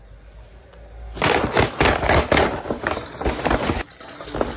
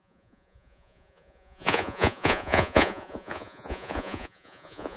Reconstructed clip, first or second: second